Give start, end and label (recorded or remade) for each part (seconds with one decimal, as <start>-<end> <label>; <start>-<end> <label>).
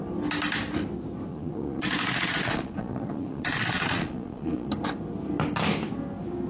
0.0-1.3 recorded; 1.3-4.7 remade; 4.7-6.5 recorded